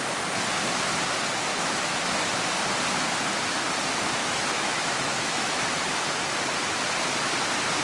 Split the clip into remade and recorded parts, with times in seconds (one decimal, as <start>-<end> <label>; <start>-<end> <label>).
0.0-1.5 recorded; 1.5-2.3 remade; 2.3-4.2 recorded; 4.2-5.6 remade; 5.6-7.8 recorded